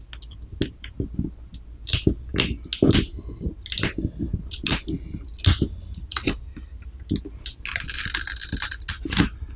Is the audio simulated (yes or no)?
no